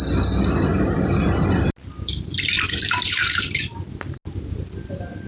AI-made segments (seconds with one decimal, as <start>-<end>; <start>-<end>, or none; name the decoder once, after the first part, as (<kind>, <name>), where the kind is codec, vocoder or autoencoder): none